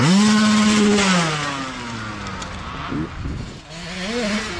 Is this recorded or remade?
recorded